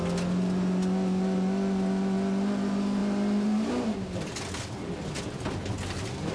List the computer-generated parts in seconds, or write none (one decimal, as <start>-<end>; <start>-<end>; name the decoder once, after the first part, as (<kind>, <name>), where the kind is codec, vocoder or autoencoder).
3.0-3.7 (vocoder, BigVGAN v2)